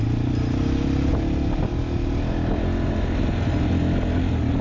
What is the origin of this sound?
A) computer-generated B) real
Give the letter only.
B